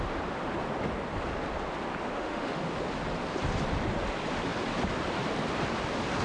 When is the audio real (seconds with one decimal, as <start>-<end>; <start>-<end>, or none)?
0.0-2.1; 2.6-6.2

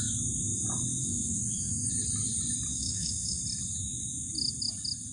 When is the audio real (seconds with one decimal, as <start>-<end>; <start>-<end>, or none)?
0.0-0.9; 1.9-2.7; 3.4-3.8; 4.3-5.1